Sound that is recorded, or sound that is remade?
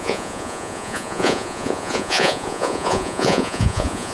remade